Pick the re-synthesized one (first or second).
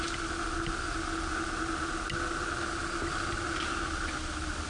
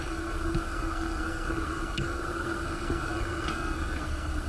second